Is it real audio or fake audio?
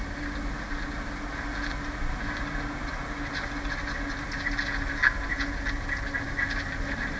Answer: real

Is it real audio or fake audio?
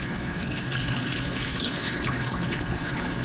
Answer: fake